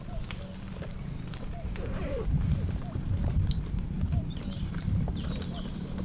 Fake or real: fake